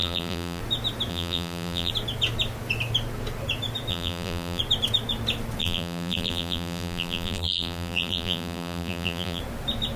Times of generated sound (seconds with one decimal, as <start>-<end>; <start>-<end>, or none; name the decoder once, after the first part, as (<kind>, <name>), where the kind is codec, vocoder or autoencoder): 0.0-0.6 (vocoder, BigVGAN v2); 1.1-1.9; 3.9-4.6; 5.6-9.4